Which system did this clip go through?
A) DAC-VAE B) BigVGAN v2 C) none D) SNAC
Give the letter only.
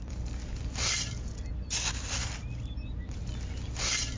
C